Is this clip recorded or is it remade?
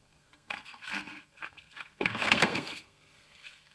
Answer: remade